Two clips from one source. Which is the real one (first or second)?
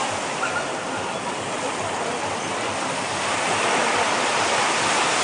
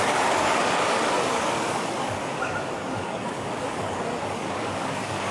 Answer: first